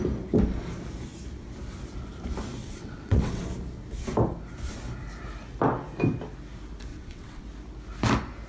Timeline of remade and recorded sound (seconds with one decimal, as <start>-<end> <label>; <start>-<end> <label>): 0.0-2.6 recorded; 2.6-3.4 remade; 3.4-6.9 recorded; 6.9-7.4 remade; 7.4-8.5 recorded